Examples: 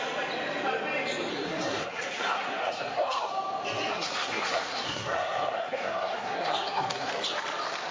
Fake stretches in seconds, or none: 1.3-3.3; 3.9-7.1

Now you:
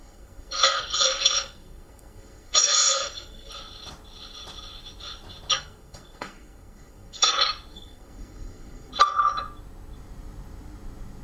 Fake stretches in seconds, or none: 0.0-3.5; 5.5-7.3; 7.7-8.9